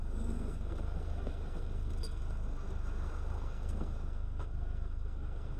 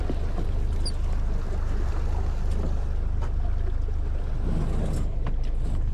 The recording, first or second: second